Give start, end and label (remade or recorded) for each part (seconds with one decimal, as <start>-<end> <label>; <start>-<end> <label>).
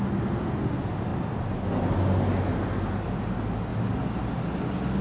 0.0-5.0 recorded